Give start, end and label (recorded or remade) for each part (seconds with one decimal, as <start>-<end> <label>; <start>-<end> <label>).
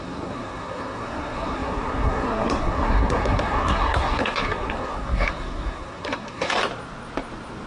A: 0.0-6.6 remade; 6.6-7.7 recorded